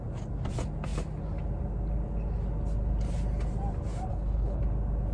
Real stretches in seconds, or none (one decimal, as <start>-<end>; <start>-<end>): 0.0-4.1; 4.6-5.1